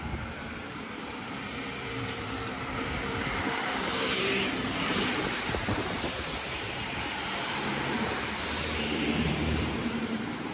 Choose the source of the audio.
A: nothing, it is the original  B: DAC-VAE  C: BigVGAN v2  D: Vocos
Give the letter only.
C